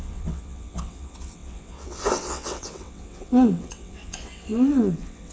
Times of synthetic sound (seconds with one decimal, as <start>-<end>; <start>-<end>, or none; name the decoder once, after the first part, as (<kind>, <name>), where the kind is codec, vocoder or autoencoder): 0.0-5.3 (vocoder, WaveNeXt)